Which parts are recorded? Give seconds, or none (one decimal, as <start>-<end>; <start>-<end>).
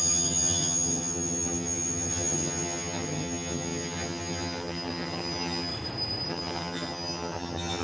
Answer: 5.7-6.3